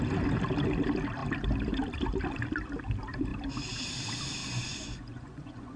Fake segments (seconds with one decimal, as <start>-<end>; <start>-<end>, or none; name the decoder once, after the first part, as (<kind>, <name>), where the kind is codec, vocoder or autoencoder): 4.4-5.8 (vocoder, Vocos)